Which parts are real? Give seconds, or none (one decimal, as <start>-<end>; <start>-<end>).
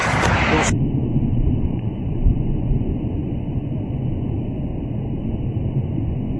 0.0-0.8; 4.7-5.7